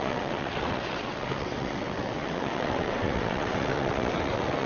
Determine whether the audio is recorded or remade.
remade